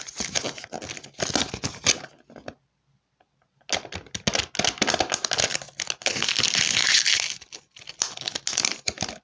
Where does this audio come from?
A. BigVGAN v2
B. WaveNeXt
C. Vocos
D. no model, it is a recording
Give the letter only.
D